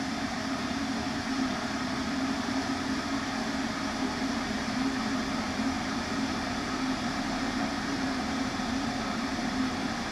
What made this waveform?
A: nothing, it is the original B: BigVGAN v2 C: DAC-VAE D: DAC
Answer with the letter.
B